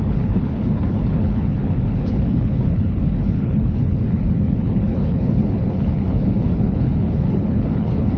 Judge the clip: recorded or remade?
remade